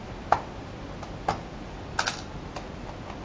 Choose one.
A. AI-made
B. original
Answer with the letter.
B